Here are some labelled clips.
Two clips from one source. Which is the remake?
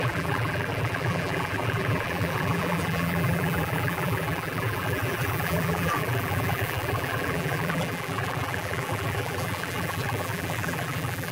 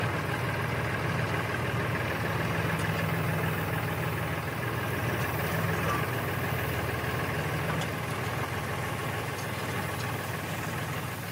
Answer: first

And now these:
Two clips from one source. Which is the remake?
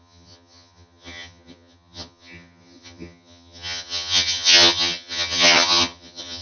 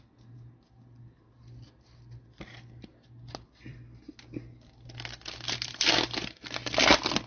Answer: first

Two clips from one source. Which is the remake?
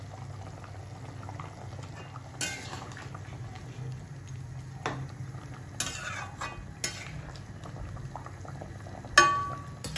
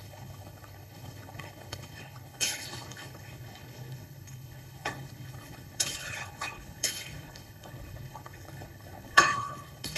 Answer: second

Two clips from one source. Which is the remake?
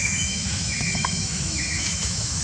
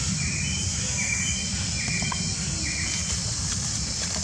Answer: first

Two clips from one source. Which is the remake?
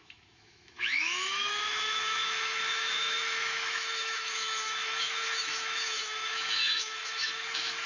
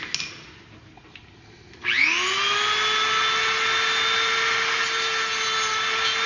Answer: first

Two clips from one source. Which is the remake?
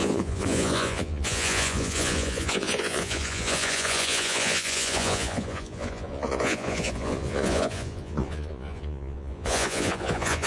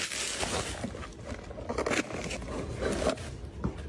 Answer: first